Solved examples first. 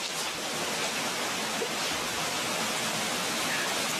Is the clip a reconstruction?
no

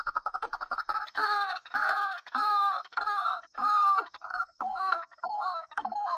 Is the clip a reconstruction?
yes